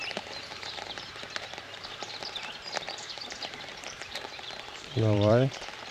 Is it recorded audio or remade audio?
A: remade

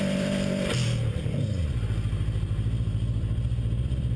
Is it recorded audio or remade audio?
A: remade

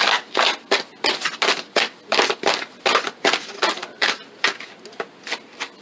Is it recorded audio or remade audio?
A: recorded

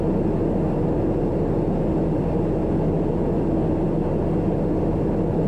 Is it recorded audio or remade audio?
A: recorded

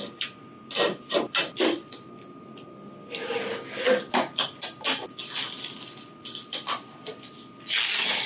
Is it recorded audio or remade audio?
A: recorded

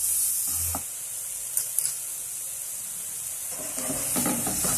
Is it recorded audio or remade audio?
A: recorded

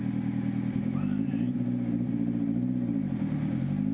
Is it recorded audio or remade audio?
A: recorded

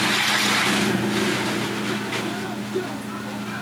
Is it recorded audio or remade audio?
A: recorded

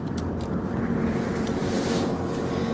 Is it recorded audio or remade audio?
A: remade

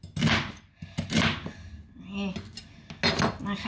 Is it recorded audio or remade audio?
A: recorded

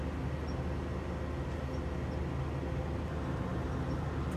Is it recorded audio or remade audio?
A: recorded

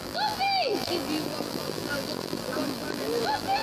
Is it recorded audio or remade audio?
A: remade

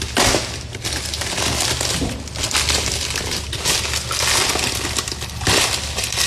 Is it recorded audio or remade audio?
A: recorded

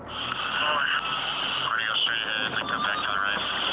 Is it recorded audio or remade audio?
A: recorded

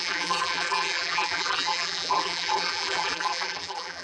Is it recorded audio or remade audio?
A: remade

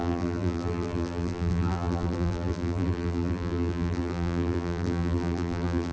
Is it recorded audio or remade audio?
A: remade